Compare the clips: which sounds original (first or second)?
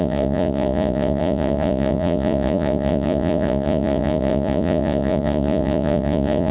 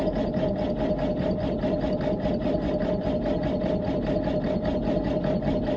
second